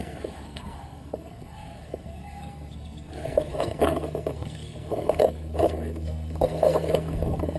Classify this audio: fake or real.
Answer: fake